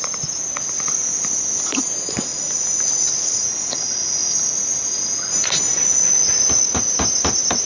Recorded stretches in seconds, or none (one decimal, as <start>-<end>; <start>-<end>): 0.0-7.7